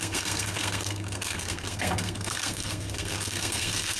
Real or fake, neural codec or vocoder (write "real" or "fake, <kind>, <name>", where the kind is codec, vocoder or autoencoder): fake, codec, SNAC